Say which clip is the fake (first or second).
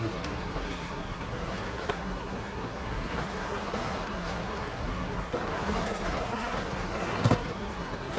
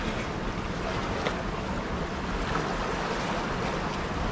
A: first